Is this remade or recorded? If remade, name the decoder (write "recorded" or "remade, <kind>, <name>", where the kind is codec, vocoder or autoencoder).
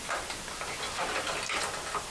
recorded